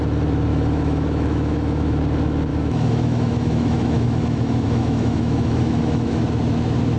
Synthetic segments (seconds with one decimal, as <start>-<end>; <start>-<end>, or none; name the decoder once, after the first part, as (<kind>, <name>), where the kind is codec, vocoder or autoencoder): 0.5-2.0 (autoencoder, DAC-VAE); 2.5-6.2